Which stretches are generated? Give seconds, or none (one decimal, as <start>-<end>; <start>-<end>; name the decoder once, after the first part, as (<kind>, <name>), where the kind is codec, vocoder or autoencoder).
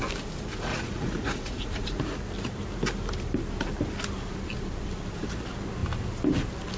0.7-2.0 (vocoder, Vocos)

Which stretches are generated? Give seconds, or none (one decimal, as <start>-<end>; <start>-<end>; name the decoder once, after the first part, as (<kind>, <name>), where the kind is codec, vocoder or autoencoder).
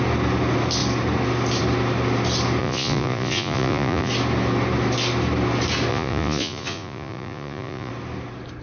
2.6-4.1 (vocoder, Vocos); 5.9-7.9